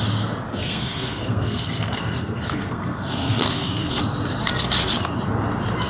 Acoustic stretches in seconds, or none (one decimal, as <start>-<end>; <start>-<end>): 0.0-0.5; 4.0-5.9